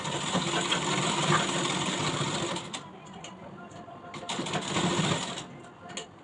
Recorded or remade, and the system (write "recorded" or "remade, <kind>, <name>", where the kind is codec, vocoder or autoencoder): recorded